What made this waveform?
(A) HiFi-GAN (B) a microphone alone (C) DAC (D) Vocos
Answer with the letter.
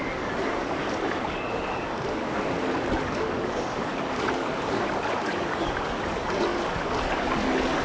C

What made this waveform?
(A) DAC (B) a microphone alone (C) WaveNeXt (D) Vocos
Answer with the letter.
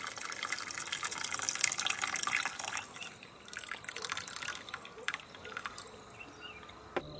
B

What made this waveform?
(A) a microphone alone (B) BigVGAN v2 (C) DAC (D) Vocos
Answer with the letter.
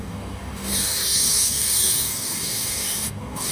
C